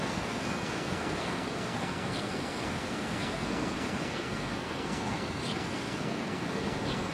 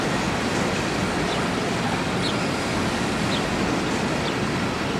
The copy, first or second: first